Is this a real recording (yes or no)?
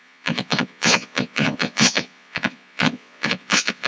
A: no